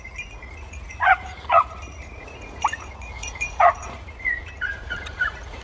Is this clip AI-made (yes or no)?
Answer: yes